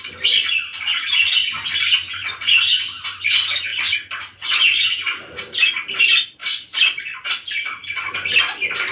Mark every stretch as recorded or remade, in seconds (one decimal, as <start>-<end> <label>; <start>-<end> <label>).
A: 0.0-8.9 recorded